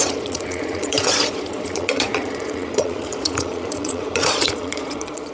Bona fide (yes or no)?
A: no